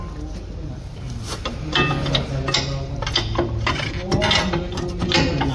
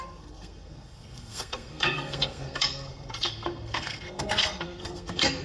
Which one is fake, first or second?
second